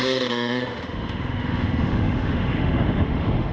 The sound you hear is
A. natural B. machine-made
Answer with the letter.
B